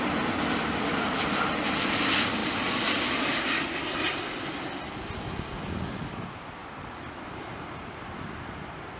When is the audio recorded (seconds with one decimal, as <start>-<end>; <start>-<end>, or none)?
0.0-9.0

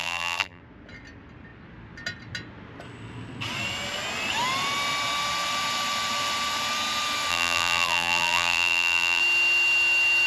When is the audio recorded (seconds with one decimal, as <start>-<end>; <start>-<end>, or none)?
0.6-7.3; 9.2-10.3